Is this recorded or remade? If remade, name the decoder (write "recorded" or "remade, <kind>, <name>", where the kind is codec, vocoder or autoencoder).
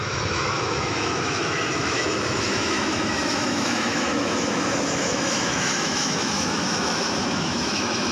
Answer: remade, autoencoder, DAC-VAE